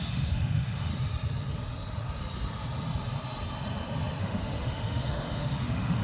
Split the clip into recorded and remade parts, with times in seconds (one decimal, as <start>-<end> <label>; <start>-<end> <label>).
0.0-0.9 remade; 0.9-4.2 recorded; 4.2-6.0 remade